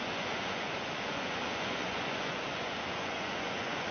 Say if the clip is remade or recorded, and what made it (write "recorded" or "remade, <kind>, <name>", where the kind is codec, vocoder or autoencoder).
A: remade, vocoder, Vocos